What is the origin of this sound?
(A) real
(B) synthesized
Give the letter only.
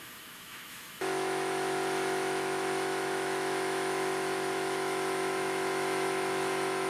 B